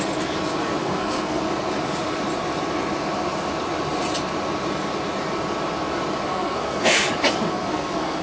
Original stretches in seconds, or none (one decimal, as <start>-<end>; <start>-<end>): 0.0-0.8; 1.4-6.3; 7.1-7.5